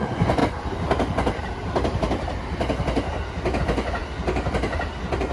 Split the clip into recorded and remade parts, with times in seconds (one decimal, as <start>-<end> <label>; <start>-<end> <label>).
0.0-0.4 remade; 0.4-3.6 recorded; 3.6-4.0 remade; 4.0-5.3 recorded